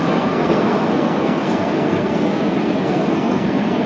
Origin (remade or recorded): remade